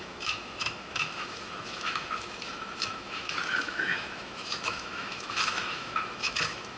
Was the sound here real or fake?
fake